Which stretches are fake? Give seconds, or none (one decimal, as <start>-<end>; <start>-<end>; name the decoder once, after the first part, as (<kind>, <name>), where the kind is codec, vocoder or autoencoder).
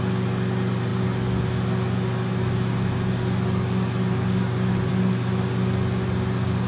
none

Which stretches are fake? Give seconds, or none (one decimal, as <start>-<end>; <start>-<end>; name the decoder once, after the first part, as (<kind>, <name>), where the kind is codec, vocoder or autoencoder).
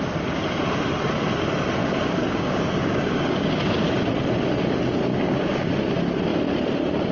1.8-4.1 (codec, DAC); 5.1-5.7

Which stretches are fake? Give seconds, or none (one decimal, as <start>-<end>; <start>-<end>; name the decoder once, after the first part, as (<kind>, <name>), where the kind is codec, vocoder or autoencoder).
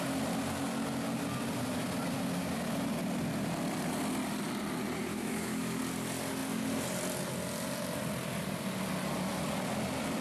5.1-5.8 (autoencoder, DAC-VAE)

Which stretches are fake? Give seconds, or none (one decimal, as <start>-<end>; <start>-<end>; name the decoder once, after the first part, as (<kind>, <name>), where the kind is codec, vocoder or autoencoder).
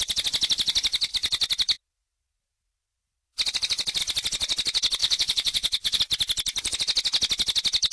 5.0-6.0 (vocoder, Vocos)